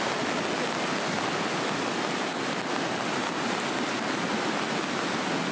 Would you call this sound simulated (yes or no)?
no